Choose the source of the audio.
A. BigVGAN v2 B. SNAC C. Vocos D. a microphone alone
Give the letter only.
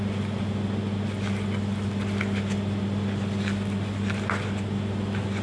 D